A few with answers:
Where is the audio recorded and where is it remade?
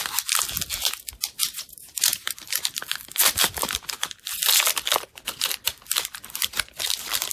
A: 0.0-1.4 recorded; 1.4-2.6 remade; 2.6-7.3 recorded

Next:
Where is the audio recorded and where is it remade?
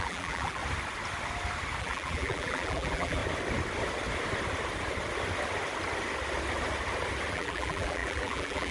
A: 0.0-0.6 remade; 0.6-1.8 recorded; 1.8-3.2 remade; 3.2-7.3 recorded; 7.3-8.7 remade